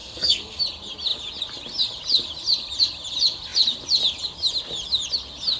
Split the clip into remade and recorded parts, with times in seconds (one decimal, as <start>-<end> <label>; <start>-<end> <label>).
0.0-0.6 remade; 0.6-5.6 recorded